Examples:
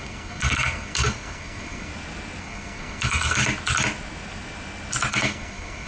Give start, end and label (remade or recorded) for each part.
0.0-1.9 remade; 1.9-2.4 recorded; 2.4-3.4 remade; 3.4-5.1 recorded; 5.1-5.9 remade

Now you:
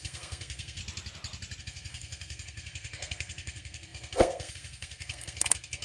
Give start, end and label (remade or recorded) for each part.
0.0-0.8 remade; 0.8-1.6 recorded; 1.6-5.8 remade